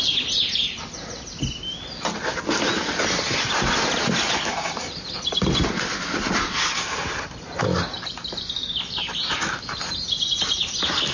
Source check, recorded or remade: recorded